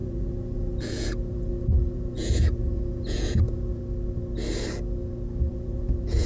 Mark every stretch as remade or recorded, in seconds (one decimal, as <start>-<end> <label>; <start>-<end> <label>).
0.0-3.8 remade; 3.8-5.5 recorded; 5.5-6.3 remade